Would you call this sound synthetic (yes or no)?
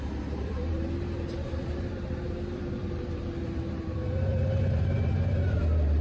yes